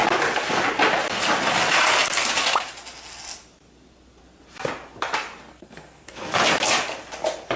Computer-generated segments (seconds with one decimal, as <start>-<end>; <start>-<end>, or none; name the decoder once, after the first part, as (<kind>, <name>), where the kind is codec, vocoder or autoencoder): 5.5-6.4 (codec, SNAC)